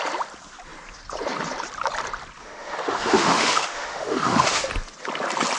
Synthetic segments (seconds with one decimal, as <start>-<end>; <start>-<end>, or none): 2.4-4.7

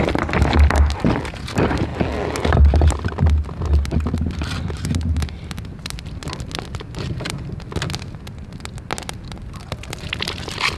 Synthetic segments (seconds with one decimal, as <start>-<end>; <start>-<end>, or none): none

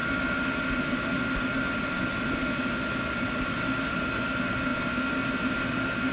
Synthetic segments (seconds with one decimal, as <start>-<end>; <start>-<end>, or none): none

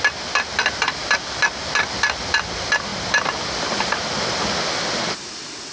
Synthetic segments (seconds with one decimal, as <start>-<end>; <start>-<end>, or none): none

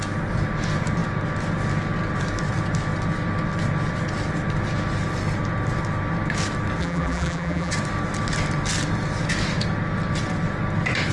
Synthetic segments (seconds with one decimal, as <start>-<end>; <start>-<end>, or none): 6.8-7.7

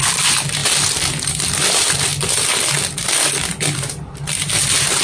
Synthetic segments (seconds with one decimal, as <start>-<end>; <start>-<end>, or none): none